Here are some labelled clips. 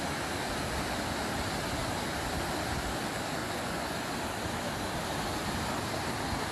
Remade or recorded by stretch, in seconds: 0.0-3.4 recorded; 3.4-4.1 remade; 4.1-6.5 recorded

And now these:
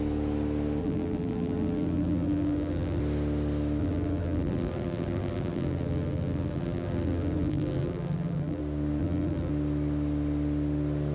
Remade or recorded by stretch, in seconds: 0.0-0.8 recorded; 0.8-3.0 remade; 3.0-3.8 recorded; 3.8-8.6 remade; 8.6-9.0 recorded; 9.0-9.5 remade; 9.5-11.1 recorded

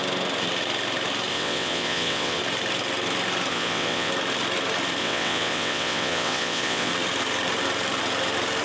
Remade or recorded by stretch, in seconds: 0.0-1.3 recorded; 1.3-2.4 remade; 2.4-3.5 recorded; 3.5-4.1 remade; 4.1-5.0 recorded; 5.0-6.9 remade; 6.9-8.6 recorded